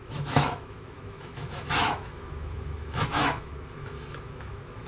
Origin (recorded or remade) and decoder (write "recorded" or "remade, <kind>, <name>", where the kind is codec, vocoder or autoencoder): remade, autoencoder, DAC-VAE